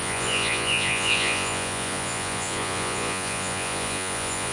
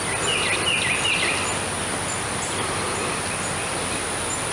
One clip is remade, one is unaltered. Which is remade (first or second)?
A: first